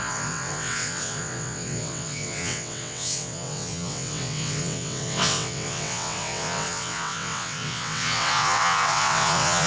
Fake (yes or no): yes